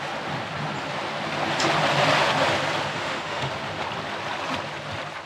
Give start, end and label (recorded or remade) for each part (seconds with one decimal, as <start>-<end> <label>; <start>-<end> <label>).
0.0-2.9 recorded; 2.9-3.5 remade; 3.5-5.3 recorded